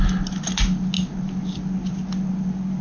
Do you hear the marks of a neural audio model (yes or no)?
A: no